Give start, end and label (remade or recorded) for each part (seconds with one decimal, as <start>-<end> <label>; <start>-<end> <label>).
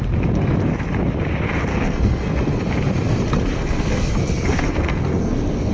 0.0-1.7 recorded; 1.7-2.6 remade; 2.6-3.5 recorded; 3.5-5.7 remade